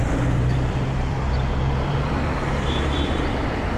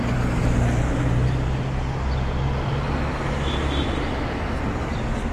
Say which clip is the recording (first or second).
second